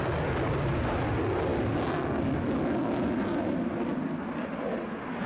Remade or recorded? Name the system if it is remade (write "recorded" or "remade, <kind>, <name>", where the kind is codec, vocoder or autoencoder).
recorded